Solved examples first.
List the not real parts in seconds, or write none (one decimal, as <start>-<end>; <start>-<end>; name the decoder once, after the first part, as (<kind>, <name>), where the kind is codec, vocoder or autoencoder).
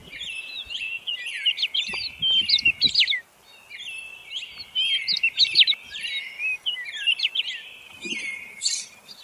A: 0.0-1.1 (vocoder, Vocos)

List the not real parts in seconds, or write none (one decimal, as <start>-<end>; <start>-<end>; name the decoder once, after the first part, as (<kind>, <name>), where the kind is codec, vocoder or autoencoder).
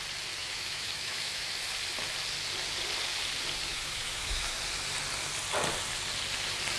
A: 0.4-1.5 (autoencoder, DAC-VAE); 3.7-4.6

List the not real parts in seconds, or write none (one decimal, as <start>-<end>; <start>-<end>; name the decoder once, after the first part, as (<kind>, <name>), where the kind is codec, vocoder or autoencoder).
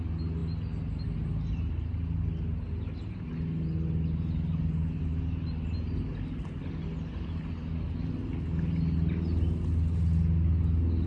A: none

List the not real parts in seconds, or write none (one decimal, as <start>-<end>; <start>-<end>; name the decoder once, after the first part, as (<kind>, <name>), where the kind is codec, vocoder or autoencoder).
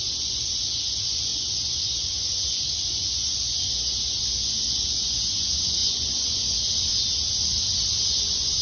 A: 0.0-6.9 (vocoder, Vocos); 8.1-8.6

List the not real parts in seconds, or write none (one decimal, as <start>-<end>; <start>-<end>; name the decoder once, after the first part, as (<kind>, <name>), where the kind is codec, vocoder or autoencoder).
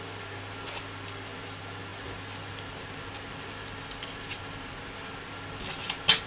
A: none